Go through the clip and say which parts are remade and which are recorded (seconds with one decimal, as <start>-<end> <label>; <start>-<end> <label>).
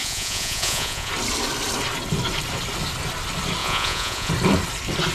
0.0-1.1 remade; 1.1-3.6 recorded; 3.6-4.3 remade; 4.3-5.1 recorded